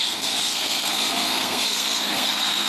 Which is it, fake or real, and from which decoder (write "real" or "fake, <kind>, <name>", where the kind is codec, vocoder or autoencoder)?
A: fake, codec, SNAC